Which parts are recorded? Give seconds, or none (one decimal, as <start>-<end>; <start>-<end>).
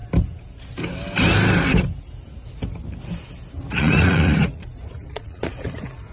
0.0-3.7